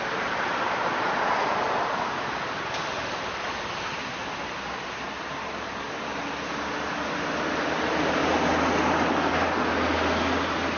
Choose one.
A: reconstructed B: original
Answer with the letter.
B